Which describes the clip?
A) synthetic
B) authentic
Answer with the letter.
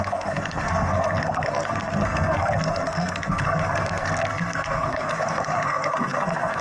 A